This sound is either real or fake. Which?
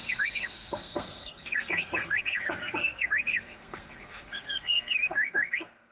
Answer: fake